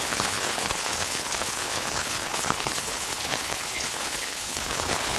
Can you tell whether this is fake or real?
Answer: fake